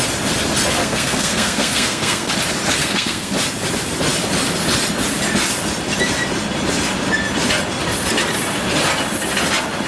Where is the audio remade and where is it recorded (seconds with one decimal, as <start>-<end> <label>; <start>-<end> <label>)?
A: 0.0-0.8 recorded; 0.8-2.3 remade; 2.3-2.8 recorded; 2.8-3.3 remade; 3.3-9.9 recorded